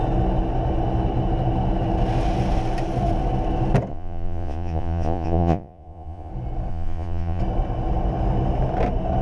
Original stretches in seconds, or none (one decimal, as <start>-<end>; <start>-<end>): 0.0-3.9; 6.3-6.7; 7.4-9.2